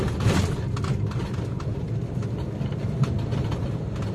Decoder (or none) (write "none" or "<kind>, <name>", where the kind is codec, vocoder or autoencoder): none